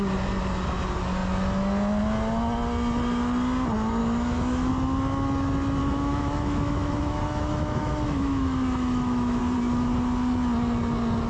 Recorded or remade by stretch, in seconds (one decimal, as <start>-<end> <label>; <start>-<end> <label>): 0.0-4.0 recorded; 4.0-4.7 remade; 4.7-5.8 recorded; 5.8-9.4 remade; 9.4-11.3 recorded